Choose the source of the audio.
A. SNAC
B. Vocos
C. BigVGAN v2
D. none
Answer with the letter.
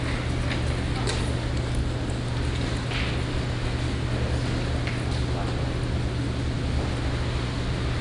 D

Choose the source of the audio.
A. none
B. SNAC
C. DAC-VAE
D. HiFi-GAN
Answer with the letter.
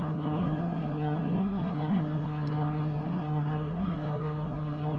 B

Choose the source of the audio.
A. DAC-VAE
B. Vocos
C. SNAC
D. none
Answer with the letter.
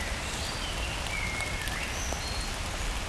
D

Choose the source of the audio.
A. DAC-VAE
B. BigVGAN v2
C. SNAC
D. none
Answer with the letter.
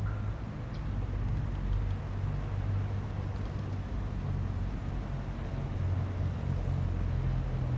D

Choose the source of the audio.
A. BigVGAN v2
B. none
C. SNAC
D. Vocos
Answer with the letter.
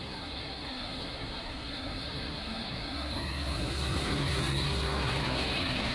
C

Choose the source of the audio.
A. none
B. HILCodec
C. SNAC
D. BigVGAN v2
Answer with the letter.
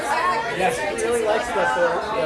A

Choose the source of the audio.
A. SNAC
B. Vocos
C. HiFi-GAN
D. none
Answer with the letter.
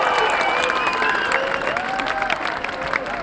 D